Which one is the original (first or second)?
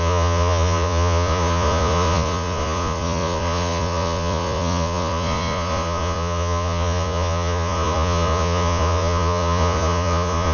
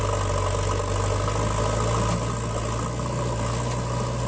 second